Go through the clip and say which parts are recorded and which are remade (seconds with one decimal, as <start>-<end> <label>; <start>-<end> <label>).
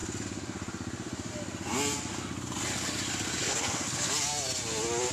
0.0-3.4 recorded; 3.4-4.1 remade; 4.1-5.1 recorded